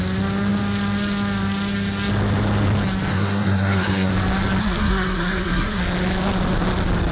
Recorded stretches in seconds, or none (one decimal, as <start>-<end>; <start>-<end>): 0.0-3.1; 4.1-4.6; 5.8-7.1